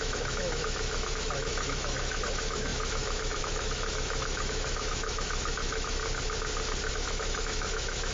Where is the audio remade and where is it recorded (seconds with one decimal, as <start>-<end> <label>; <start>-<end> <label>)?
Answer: 0.0-6.0 remade; 6.0-6.9 recorded; 6.9-8.1 remade